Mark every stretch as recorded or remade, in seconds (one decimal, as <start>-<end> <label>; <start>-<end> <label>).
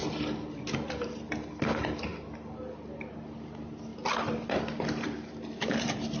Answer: 0.0-1.1 remade; 1.1-2.1 recorded; 2.1-3.1 remade; 3.1-3.9 recorded; 3.9-6.2 remade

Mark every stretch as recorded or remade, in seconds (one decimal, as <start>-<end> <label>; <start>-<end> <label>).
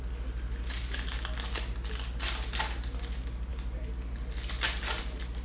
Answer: 0.0-5.4 recorded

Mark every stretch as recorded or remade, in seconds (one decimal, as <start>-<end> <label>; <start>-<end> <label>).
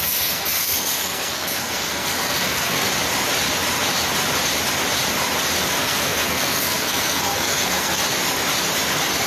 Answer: 0.0-2.9 remade; 2.9-5.7 recorded; 5.7-8.0 remade; 8.0-9.3 recorded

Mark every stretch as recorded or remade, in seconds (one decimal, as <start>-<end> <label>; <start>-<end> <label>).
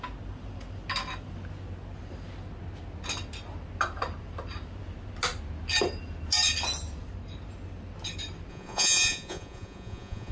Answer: 0.0-8.5 recorded; 8.5-10.3 remade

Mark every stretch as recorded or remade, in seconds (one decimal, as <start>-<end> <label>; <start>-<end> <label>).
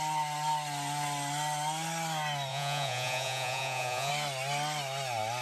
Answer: 0.0-2.5 recorded; 2.5-4.1 remade; 4.1-5.4 recorded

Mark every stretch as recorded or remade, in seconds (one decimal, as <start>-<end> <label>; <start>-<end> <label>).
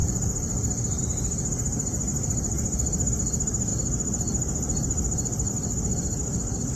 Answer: 0.0-1.0 remade; 1.0-2.1 recorded; 2.1-3.1 remade; 3.1-3.7 recorded; 3.7-5.5 remade; 5.5-6.8 recorded